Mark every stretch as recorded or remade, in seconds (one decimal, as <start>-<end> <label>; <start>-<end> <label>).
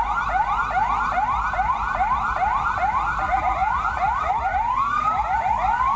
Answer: 0.0-3.6 recorded; 3.6-4.4 remade; 4.4-6.0 recorded